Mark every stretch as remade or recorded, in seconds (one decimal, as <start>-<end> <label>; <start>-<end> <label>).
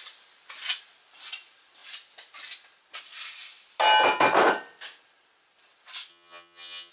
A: 0.0-6.1 recorded; 6.1-6.9 remade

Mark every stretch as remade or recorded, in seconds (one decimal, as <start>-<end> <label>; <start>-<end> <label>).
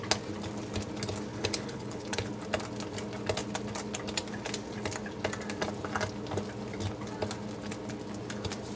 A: 0.0-1.3 recorded; 1.3-2.3 remade; 2.3-8.8 recorded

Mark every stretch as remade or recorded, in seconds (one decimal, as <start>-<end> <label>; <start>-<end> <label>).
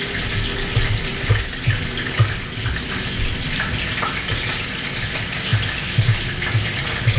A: 0.0-7.2 recorded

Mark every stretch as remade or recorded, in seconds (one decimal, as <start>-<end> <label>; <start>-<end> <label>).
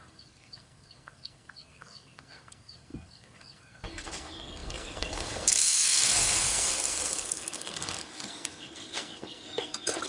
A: 0.0-10.1 remade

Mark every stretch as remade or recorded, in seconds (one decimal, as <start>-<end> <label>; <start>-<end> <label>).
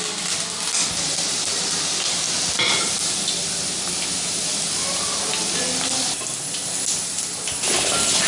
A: 0.0-8.3 recorded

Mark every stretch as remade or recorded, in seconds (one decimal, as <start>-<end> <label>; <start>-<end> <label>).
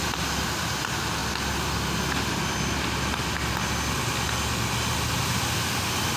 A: 0.0-6.2 recorded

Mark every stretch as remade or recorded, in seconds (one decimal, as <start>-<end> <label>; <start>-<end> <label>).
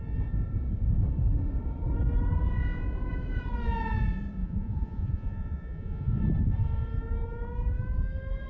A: 0.0-4.4 recorded; 4.4-6.2 remade; 6.2-8.5 recorded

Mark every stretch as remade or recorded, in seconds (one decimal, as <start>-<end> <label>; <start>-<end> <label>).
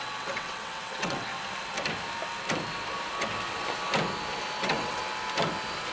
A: 0.0-1.3 remade; 1.3-4.6 recorded; 4.6-5.0 remade; 5.0-5.9 recorded